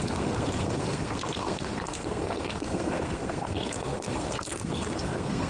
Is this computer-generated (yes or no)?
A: yes